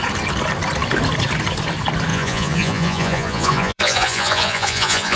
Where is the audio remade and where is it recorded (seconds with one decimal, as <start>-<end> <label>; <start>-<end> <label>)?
0.0-2.1 recorded; 2.1-5.2 remade

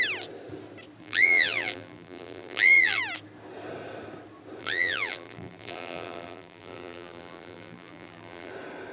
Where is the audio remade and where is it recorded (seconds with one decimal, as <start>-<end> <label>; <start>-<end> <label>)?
0.0-1.0 recorded; 1.0-3.0 remade; 3.0-4.6 recorded; 4.6-8.5 remade; 8.5-8.9 recorded